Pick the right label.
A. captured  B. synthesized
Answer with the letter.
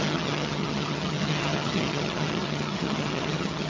B